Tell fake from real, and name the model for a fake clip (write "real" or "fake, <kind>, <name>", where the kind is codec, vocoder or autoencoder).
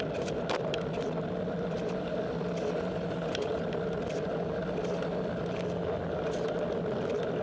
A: real